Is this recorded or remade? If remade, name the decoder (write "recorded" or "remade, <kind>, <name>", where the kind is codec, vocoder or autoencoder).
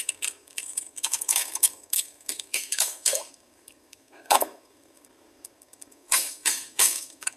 remade, codec, SNAC